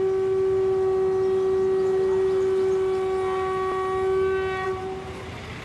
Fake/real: real